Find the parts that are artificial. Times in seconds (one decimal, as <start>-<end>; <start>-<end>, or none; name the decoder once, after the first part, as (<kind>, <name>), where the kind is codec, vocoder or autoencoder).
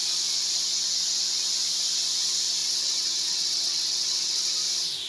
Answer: 2.6-4.5 (vocoder, WaveNeXt)